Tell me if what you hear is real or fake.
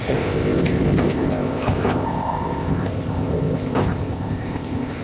fake